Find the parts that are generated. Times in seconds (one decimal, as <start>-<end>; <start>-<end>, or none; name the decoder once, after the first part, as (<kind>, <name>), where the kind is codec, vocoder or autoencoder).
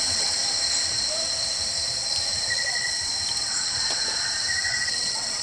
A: 0.0-0.4 (vocoder, WaveNeXt); 2.5-3.1; 4.6-5.4